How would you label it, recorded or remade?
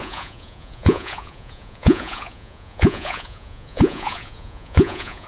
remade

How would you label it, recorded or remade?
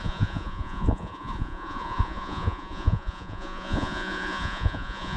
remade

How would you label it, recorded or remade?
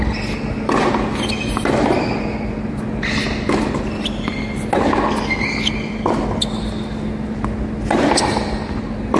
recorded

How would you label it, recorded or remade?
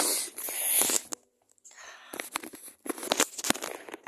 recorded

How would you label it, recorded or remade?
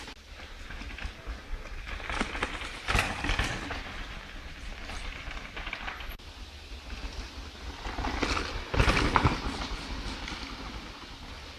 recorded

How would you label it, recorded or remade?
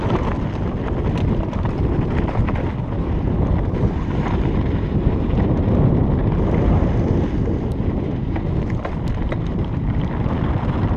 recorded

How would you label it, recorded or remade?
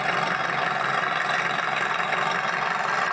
recorded